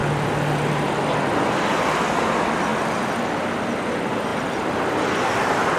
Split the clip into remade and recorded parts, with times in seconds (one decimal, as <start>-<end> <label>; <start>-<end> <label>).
0.0-5.8 recorded